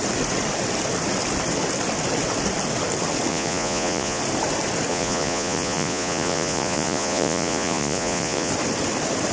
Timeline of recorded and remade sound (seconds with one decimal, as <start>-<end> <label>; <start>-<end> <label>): 0.0-3.3 recorded; 3.3-4.2 remade; 4.2-4.9 recorded; 4.9-8.5 remade; 8.5-9.3 recorded